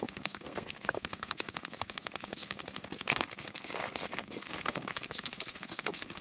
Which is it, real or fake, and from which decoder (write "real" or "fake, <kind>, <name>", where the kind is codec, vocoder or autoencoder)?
fake, codec, SNAC